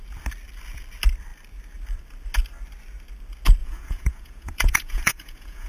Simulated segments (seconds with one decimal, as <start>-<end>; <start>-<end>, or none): 3.6-5.7